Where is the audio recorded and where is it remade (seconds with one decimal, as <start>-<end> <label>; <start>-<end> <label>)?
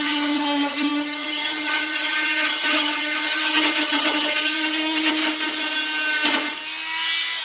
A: 0.0-5.2 remade; 5.2-7.4 recorded